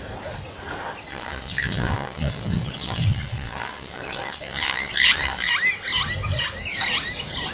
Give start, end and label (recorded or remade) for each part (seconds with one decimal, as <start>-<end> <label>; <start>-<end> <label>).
0.0-1.1 recorded; 1.1-5.5 remade; 5.5-7.5 recorded